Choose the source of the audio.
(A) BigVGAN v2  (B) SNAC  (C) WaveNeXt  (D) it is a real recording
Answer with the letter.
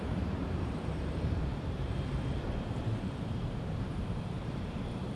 A